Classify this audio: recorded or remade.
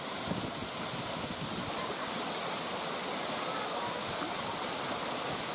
recorded